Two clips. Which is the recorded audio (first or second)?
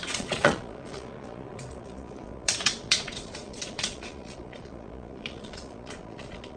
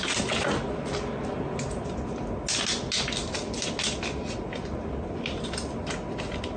second